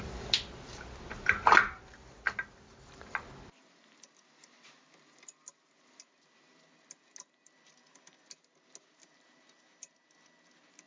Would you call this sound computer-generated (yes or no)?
no